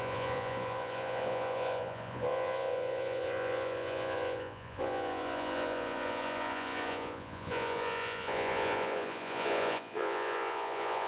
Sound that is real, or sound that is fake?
fake